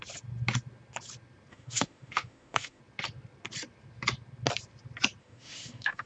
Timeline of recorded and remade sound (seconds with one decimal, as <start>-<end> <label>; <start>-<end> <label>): 0.0-1.5 recorded; 1.5-2.8 remade; 2.8-5.2 recorded; 5.2-6.1 remade

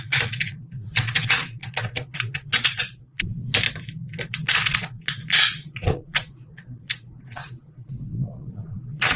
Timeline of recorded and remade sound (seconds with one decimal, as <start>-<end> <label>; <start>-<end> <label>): 0.0-3.5 remade; 3.5-4.3 recorded; 4.3-9.2 remade

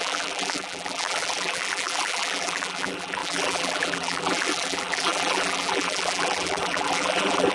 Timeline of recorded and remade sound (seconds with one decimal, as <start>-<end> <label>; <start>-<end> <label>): 0.0-7.5 remade

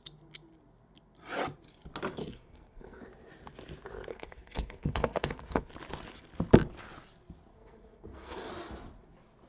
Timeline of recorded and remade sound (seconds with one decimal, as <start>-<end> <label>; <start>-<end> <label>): 0.0-2.2 recorded; 2.2-3.0 remade; 3.0-4.1 recorded; 4.1-5.7 remade; 5.7-7.5 recorded; 7.5-8.5 remade; 8.5-9.5 recorded